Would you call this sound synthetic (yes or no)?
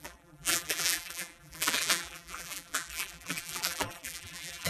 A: yes